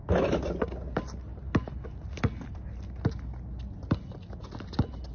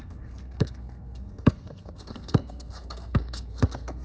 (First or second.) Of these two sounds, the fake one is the second